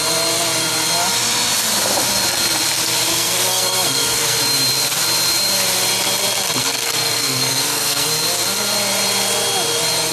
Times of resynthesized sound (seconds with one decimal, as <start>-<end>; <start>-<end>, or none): 3.1-4.4; 6.6-8.1